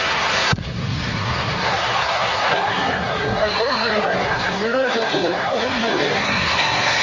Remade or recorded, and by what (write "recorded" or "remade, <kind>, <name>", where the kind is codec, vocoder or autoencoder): remade, codec, SNAC